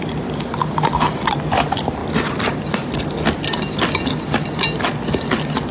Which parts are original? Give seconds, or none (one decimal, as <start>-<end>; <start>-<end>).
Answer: 0.0-5.7